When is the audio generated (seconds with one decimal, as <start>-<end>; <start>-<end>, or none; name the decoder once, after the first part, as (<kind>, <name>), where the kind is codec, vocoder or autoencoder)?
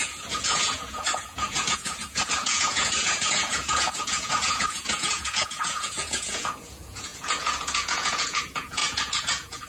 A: 0.0-9.7 (vocoder, Vocos)